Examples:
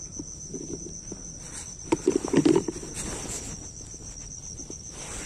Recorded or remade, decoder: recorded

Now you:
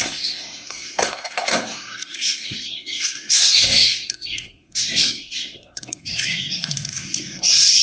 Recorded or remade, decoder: remade, codec, SNAC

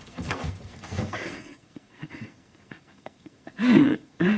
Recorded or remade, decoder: remade, codec, SNAC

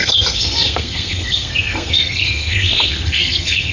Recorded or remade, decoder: remade, codec, SNAC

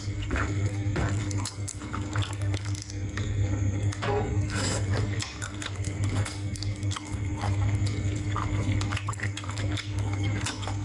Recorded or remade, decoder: remade, codec, SNAC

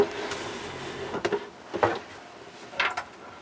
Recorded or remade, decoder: recorded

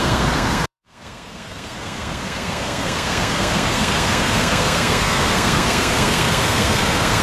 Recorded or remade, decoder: remade, codec, SNAC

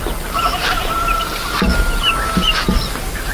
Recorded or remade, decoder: recorded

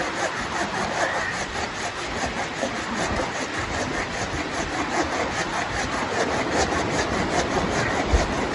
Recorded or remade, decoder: recorded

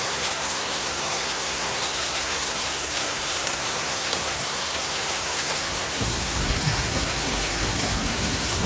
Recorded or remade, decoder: remade, codec, SNAC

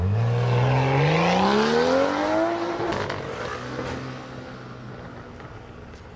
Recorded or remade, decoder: recorded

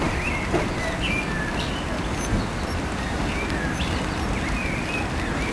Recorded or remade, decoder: recorded